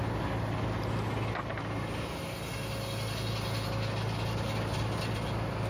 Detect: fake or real real